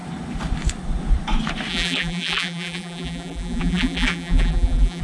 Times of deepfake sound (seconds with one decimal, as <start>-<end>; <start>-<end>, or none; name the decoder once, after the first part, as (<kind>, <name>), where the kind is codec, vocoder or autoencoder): 1.7-5.0 (vocoder, BigVGAN v2)